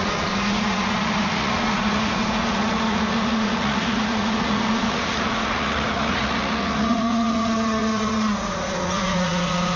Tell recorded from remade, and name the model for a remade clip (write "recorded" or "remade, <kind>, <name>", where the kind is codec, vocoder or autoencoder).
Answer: remade, vocoder, Vocos